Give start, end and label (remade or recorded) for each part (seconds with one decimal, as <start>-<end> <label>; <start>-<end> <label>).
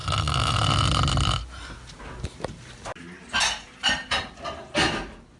0.0-5.4 recorded